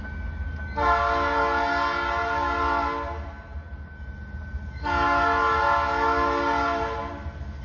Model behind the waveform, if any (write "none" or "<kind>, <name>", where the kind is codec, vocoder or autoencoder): none